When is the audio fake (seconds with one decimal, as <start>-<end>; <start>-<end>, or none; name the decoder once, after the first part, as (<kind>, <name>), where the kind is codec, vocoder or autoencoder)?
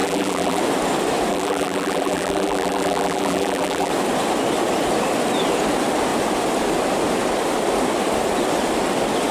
0.0-0.6 (vocoder, BigVGAN v2); 1.3-3.9